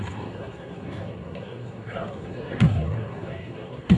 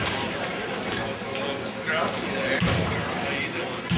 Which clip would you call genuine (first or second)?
second